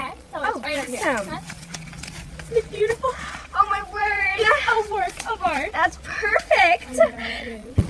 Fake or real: fake